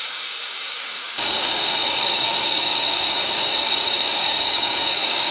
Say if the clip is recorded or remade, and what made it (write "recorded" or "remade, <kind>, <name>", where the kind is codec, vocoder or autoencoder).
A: remade, codec, DAC